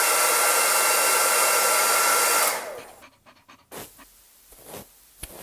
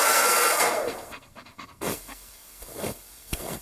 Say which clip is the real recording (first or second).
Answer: first